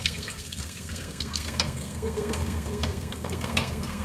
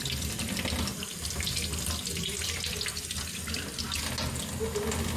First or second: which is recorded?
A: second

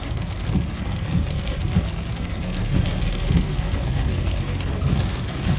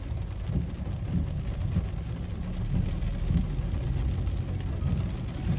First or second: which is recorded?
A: second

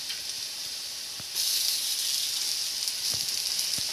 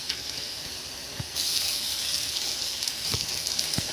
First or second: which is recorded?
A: first